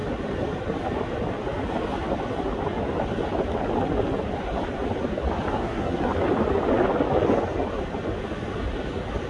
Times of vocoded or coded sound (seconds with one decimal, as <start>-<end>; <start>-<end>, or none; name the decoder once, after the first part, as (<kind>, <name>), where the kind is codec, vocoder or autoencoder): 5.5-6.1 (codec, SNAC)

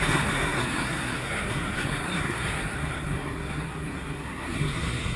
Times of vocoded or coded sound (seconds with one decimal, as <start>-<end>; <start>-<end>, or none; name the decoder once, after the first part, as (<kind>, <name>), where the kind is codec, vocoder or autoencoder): 0.0-5.2 (codec, SNAC)

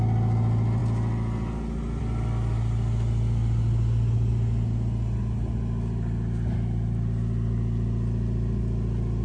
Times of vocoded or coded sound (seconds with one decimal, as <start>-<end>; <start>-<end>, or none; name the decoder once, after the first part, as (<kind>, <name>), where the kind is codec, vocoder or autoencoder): none

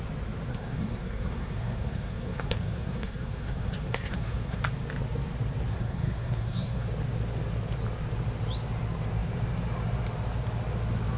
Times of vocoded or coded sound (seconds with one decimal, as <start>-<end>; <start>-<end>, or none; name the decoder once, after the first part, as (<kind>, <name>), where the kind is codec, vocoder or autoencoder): 0.5-4.6 (codec, SNAC); 5.7-6.9

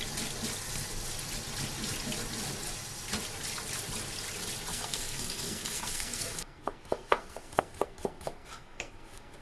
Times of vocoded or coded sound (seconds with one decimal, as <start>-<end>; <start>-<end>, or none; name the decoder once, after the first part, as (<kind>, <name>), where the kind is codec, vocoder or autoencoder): 4.7-9.4 (codec, SNAC)

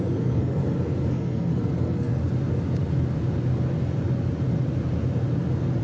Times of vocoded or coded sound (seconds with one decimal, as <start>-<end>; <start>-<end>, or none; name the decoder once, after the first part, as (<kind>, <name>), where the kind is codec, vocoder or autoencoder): 0.0-0.6 (codec, SNAC); 1.1-2.2

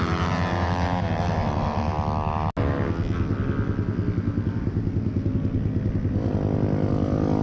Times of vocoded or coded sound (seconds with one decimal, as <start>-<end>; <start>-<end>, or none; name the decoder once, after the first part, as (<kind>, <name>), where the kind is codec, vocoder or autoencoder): none